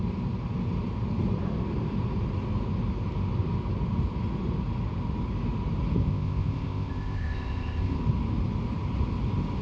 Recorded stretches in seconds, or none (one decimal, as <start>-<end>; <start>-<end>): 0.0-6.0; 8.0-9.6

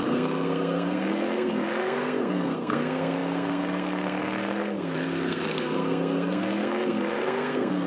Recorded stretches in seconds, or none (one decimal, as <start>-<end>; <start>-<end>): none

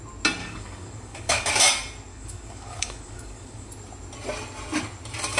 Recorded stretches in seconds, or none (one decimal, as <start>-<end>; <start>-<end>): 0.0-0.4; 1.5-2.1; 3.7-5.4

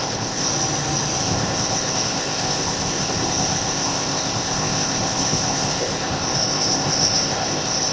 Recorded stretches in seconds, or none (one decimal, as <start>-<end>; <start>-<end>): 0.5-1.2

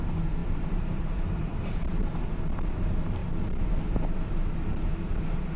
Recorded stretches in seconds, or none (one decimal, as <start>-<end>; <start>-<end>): 0.0-0.4; 1.1-1.5; 2.3-5.6

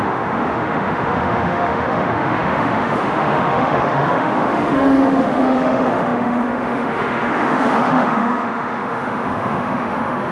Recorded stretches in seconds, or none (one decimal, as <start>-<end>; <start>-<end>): none

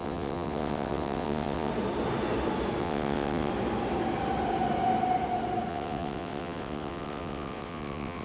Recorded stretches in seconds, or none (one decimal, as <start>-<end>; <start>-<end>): 1.7-2.8; 3.5-5.7

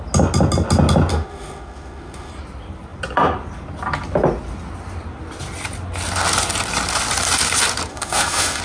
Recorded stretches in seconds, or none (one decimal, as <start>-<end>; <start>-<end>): 0.0-1.1; 2.3-7.9